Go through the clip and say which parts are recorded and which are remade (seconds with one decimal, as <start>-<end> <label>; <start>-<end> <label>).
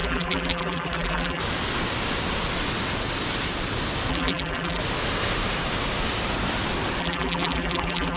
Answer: 0.0-1.4 remade; 1.4-4.1 recorded; 4.1-4.8 remade; 4.8-7.0 recorded; 7.0-8.2 remade